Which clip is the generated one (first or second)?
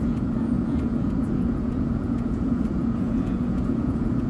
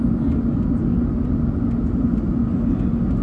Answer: first